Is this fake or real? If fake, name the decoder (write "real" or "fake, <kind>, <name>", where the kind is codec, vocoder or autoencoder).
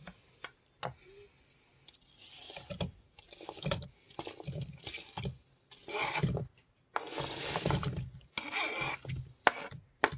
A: real